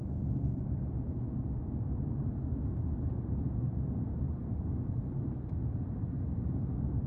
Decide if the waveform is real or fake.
real